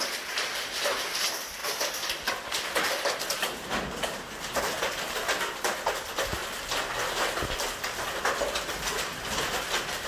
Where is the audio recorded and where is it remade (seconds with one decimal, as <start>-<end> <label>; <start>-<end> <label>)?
0.0-1.6 remade; 1.6-4.6 recorded; 4.6-6.4 remade; 6.4-8.2 recorded; 8.2-10.1 remade